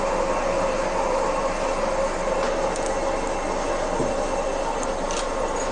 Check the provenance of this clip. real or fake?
real